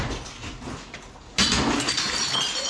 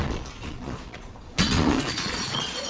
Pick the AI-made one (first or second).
second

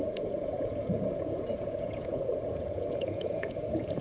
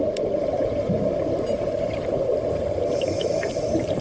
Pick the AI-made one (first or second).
first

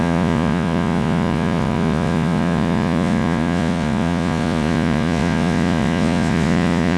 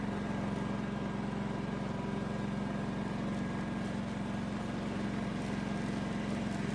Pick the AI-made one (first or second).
first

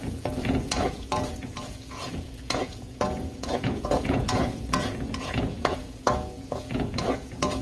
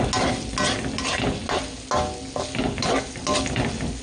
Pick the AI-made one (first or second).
first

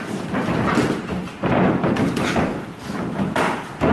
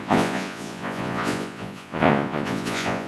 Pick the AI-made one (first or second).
second